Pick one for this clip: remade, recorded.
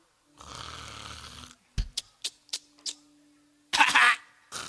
recorded